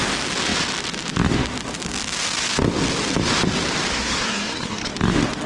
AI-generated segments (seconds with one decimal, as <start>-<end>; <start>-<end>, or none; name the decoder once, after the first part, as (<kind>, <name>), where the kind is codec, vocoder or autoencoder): 3.9-4.9 (codec, SNAC)